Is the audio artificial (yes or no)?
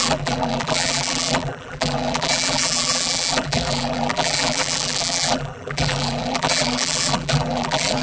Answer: yes